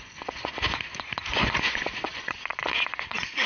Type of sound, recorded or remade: remade